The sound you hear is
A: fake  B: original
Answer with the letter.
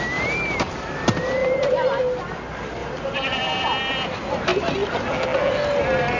B